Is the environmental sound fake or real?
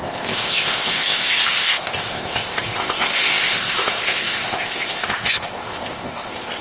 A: fake